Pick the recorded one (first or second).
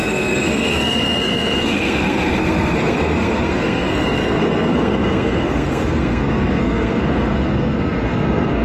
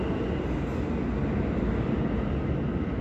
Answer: second